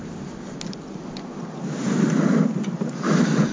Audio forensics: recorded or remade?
recorded